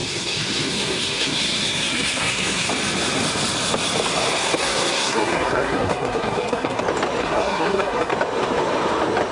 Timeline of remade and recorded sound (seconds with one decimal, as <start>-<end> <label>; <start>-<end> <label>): 0.0-2.7 remade; 2.7-4.4 recorded; 4.4-6.8 remade; 6.8-7.2 recorded; 7.2-8.1 remade; 8.1-9.3 recorded